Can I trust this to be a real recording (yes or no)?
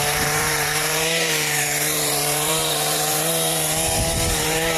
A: no